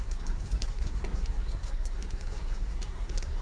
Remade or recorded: remade